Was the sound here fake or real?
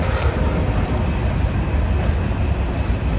real